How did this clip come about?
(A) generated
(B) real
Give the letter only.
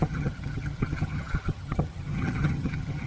A